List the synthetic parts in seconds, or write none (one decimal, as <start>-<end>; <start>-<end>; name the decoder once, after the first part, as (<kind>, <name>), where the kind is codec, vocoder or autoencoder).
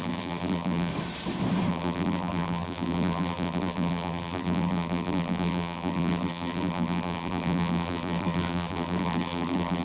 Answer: 0.0-0.9 (vocoder, BigVGAN v2); 1.7-9.8